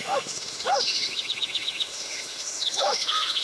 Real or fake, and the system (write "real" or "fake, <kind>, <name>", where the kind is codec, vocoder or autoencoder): fake, autoencoder, DAC-VAE